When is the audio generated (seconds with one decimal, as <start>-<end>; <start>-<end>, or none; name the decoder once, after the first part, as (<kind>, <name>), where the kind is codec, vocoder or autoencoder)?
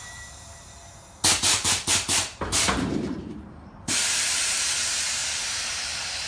0.0-6.3 (vocoder, BigVGAN v2)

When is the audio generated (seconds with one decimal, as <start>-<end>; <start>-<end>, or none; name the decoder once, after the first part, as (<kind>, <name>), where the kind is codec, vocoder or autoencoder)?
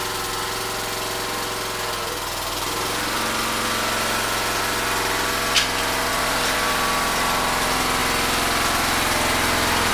6.1-6.7 (vocoder, BigVGAN v2)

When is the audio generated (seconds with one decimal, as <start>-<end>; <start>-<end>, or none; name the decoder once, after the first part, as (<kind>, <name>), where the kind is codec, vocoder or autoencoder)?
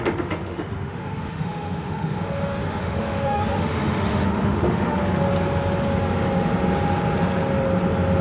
0.0-5.0 (autoencoder, DAC-VAE)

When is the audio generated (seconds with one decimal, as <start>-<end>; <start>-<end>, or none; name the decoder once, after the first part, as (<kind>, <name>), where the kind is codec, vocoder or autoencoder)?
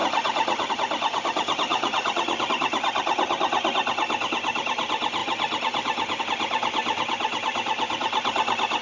0.0-0.7 (vocoder, Vocos); 1.7-2.5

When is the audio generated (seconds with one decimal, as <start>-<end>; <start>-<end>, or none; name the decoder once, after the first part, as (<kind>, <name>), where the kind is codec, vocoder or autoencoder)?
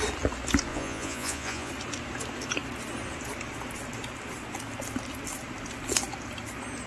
0.7-1.7 (vocoder, Vocos)